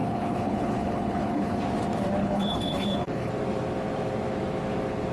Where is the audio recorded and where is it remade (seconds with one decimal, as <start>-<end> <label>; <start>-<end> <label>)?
0.0-1.6 remade; 1.6-2.2 recorded; 2.2-3.3 remade; 3.3-5.1 recorded